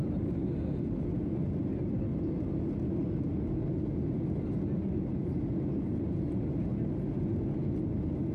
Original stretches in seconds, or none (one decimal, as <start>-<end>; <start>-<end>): 0.0-8.3